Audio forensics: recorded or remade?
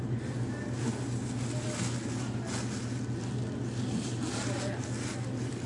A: recorded